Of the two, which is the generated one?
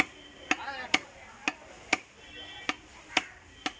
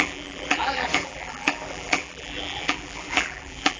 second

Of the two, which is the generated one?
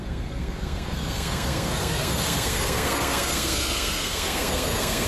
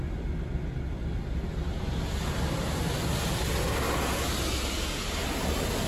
first